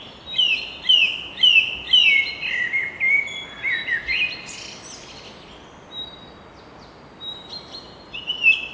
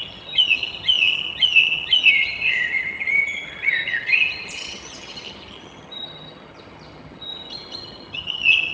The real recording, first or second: first